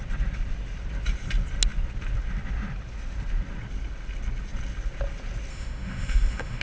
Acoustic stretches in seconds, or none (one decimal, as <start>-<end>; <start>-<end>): 0.0-5.5